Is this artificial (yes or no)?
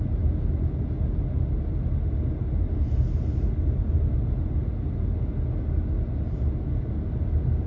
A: no